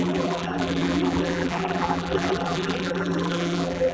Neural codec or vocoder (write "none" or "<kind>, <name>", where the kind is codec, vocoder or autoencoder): vocoder, BigVGAN v2